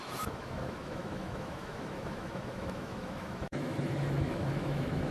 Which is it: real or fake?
fake